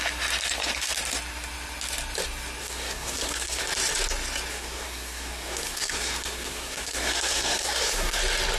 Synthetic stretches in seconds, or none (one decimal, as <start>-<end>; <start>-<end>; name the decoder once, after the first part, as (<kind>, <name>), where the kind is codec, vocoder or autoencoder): 2.6-3.6 (codec, SNAC); 4.5-8.2